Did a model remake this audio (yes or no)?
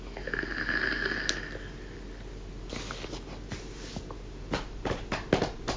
no